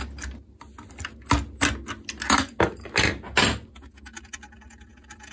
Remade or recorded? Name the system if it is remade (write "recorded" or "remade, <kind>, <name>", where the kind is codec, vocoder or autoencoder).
recorded